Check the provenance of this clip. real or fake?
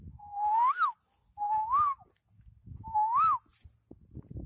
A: real